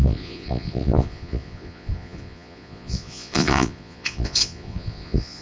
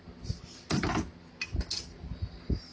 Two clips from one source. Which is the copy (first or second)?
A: first